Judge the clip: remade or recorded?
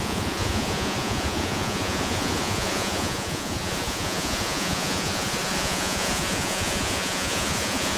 remade